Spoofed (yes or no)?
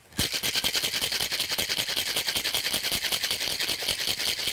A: no